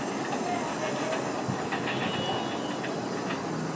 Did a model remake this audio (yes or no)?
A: no